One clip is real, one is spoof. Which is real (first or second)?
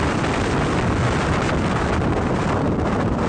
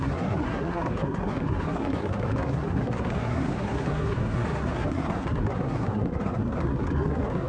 first